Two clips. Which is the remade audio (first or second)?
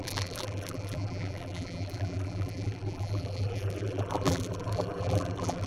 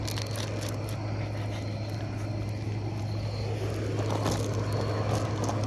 first